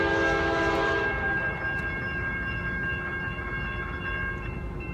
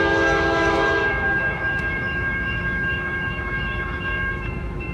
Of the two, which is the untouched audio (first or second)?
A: first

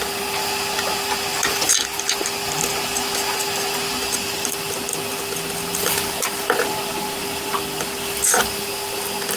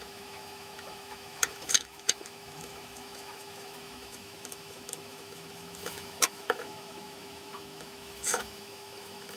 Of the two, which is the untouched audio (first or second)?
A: first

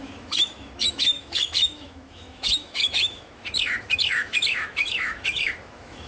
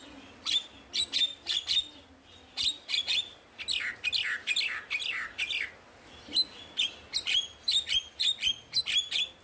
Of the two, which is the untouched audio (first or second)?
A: second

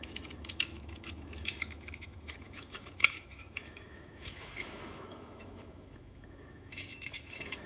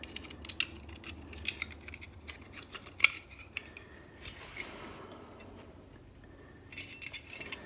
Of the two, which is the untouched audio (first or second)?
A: second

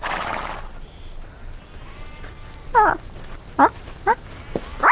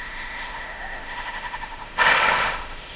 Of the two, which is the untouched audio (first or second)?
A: first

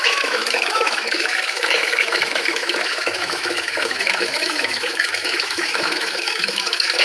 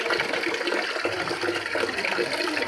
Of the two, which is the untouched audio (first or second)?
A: second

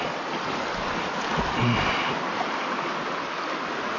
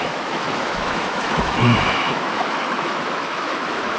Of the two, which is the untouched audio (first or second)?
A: first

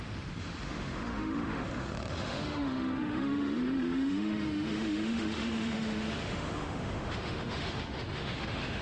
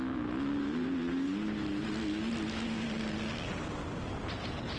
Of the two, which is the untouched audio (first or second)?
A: second